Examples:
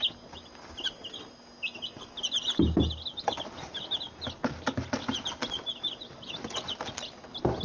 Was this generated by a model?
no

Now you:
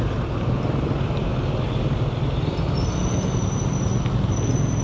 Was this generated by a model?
no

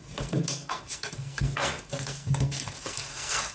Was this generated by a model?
yes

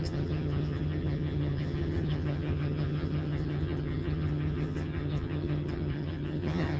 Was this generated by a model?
yes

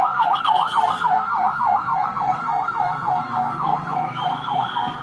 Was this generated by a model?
yes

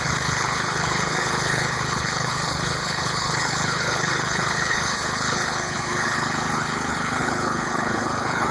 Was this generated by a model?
yes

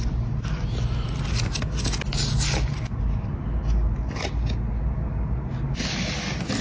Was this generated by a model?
no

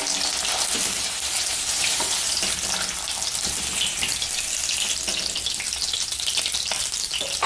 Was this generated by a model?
no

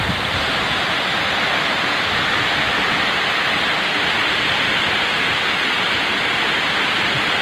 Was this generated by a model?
no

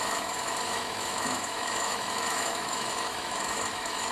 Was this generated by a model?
yes